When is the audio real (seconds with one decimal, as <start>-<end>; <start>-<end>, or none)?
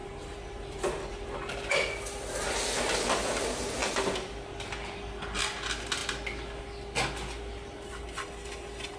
0.8-9.0